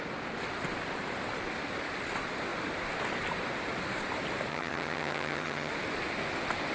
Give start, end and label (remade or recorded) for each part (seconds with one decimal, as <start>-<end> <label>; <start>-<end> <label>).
0.0-4.5 recorded; 4.5-5.7 remade; 5.7-6.7 recorded